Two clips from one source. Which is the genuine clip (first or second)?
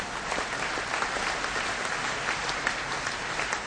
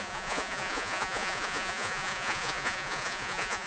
first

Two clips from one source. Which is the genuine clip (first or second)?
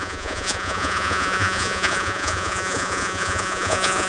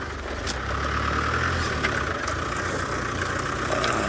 second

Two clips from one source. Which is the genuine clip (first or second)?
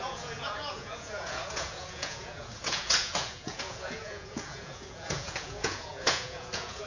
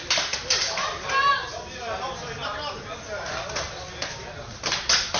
second